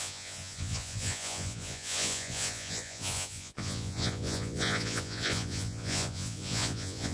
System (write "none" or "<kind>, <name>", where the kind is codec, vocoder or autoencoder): vocoder, Vocos